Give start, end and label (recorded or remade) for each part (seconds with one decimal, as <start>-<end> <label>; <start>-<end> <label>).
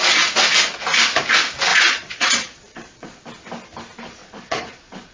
0.0-1.7 recorded; 1.7-3.2 remade; 3.2-4.2 recorded; 4.2-5.1 remade